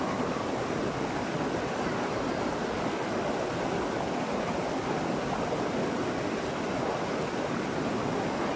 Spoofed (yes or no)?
no